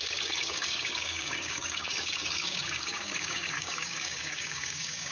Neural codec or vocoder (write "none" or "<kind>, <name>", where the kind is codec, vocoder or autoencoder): codec, DAC